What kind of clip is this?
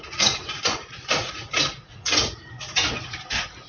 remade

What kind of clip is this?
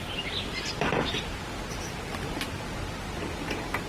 recorded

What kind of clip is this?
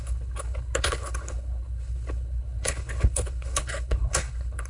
remade